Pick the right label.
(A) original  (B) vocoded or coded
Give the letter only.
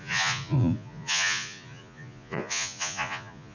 B